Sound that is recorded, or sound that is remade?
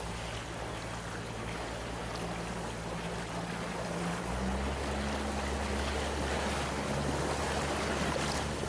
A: recorded